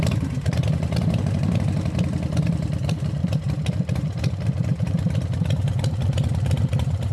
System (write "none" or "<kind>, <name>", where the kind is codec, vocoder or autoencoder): vocoder, BigVGAN v2